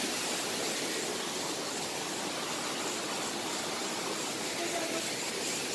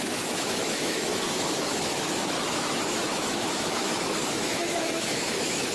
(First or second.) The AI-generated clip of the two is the second